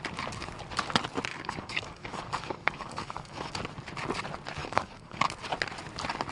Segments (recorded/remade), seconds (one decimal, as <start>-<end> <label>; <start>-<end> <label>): 0.0-1.3 recorded; 1.3-3.5 remade; 3.5-4.6 recorded; 4.6-5.2 remade; 5.2-6.3 recorded